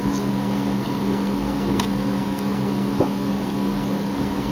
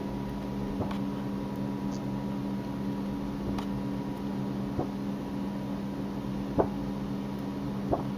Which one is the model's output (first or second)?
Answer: first